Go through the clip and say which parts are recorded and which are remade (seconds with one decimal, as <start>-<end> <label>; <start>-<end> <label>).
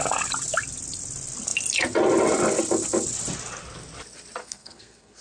0.0-4.4 recorded; 4.4-5.2 remade